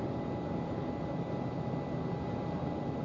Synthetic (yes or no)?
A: no